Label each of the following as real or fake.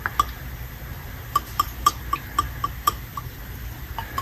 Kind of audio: real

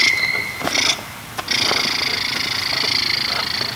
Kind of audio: real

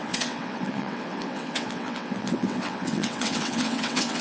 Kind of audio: fake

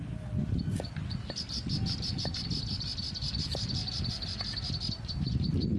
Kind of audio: real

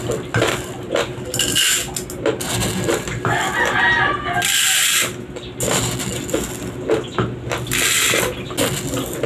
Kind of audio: real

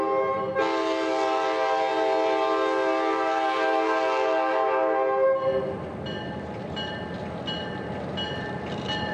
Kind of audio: real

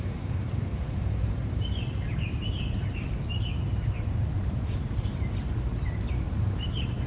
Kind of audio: fake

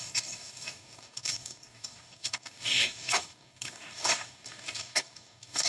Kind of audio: fake